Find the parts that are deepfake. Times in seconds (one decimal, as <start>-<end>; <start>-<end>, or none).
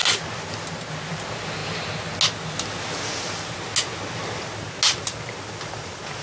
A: none